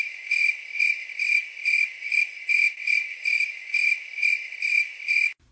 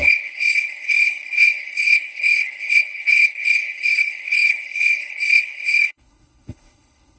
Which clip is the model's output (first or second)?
second